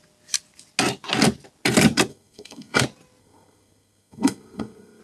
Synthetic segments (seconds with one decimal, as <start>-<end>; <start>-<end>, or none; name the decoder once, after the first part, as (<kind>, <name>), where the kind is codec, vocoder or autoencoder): 2.1-2.8 (codec, SNAC); 3.2-5.0